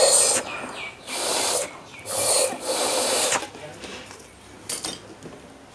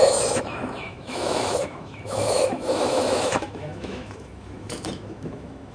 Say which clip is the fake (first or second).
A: second